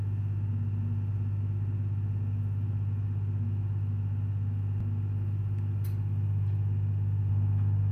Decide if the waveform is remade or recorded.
recorded